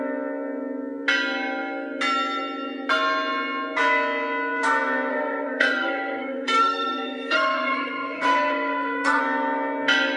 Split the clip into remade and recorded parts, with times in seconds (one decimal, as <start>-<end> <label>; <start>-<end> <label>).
0.0-5.1 recorded; 5.1-9.2 remade; 9.2-10.2 recorded